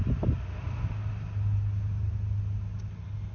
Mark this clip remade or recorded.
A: recorded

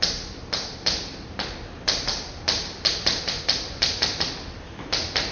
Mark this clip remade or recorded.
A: recorded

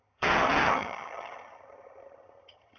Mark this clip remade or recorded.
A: remade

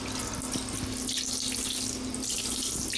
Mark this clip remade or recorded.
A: recorded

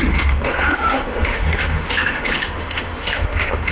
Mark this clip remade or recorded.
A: remade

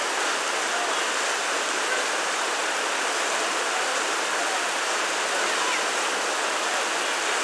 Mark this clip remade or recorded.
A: recorded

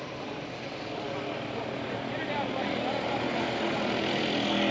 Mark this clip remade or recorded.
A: recorded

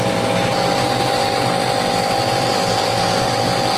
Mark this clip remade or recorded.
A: recorded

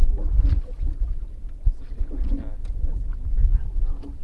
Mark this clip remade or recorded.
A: recorded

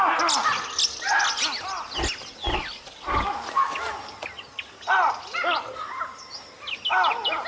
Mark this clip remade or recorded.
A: recorded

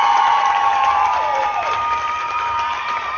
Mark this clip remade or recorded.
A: remade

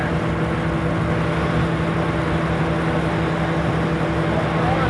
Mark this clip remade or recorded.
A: recorded